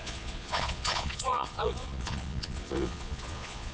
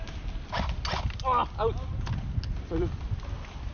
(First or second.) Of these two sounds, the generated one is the first